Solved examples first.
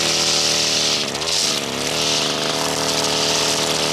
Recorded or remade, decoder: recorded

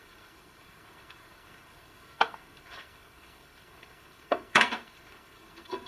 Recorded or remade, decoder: remade, codec, SNAC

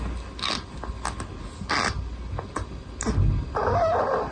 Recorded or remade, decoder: recorded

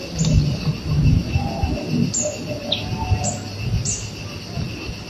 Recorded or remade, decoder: recorded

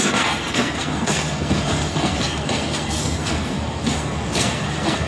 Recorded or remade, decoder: remade, codec, SNAC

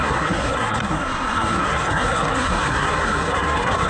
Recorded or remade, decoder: remade, codec, SNAC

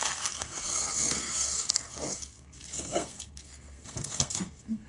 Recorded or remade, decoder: remade, codec, SNAC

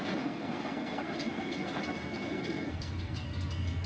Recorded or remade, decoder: remade, codec, SNAC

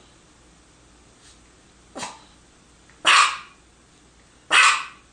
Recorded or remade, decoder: recorded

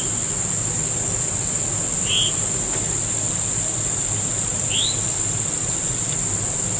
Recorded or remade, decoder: recorded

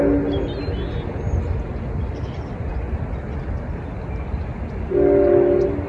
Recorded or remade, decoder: recorded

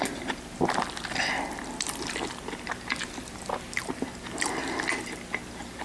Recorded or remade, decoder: recorded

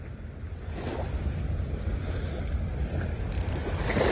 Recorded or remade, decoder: recorded